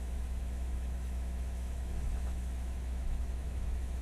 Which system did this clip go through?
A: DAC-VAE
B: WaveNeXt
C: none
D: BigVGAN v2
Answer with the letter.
A